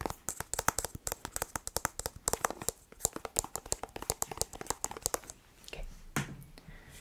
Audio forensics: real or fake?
real